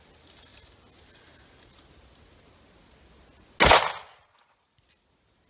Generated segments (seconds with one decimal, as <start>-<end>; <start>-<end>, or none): none